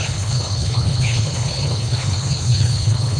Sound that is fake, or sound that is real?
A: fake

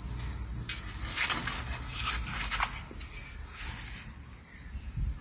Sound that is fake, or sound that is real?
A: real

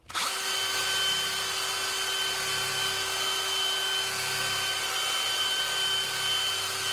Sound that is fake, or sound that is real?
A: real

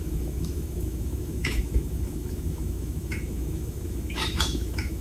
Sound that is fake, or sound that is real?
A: fake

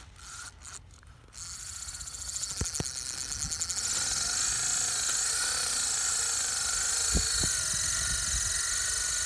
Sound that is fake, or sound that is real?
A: real